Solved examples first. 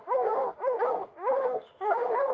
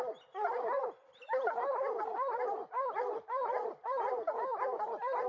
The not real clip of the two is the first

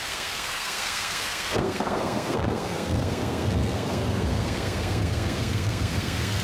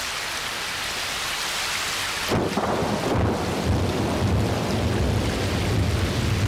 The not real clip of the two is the first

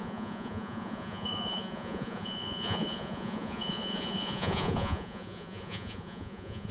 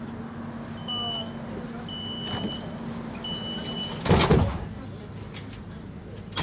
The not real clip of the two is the first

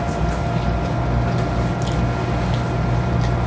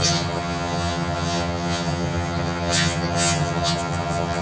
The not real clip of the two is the second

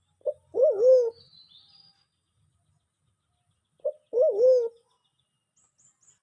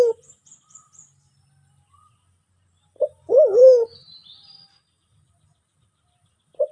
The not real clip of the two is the second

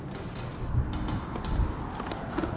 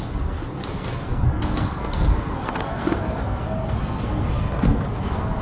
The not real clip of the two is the second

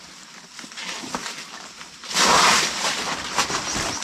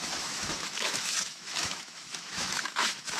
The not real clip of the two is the second